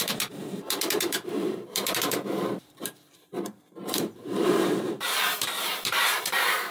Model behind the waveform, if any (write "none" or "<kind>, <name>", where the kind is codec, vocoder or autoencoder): vocoder, BigVGAN v2